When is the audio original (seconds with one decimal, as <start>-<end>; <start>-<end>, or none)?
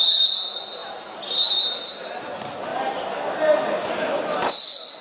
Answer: 0.0-5.0